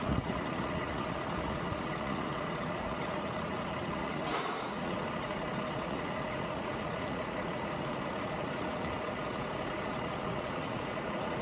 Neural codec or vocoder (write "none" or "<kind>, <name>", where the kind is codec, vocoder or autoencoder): vocoder, Vocos